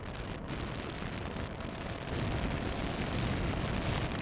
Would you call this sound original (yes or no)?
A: yes